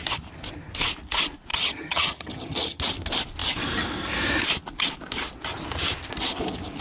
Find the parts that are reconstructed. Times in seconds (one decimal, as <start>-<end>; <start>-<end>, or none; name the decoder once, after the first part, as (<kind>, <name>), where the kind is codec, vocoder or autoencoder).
1.5-2.8 (vocoder, HiFi-GAN)